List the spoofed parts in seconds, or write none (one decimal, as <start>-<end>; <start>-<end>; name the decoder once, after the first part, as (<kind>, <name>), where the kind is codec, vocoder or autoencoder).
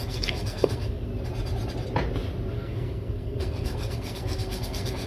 0.0-1.1 (codec, SNAC); 2.5-5.1